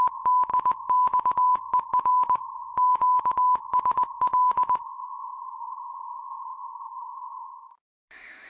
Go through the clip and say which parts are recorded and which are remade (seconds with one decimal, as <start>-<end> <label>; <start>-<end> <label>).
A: 0.0-0.5 remade; 0.5-1.8 recorded; 1.8-8.5 remade